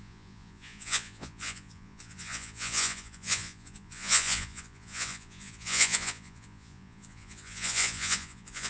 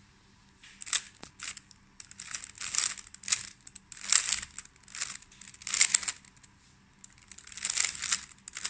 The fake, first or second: first